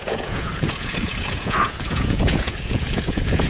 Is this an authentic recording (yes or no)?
no